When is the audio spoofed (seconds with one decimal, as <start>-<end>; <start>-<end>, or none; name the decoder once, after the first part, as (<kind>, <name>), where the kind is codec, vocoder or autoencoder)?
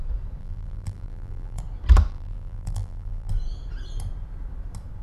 0.4-1.6 (vocoder, BigVGAN v2); 2.1-3.3